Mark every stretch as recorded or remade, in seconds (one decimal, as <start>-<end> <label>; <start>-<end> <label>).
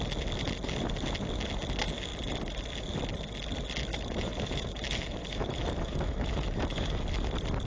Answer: 0.0-3.9 recorded; 3.9-7.0 remade; 7.0-7.7 recorded